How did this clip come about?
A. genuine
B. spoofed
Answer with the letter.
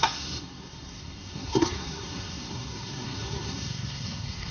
B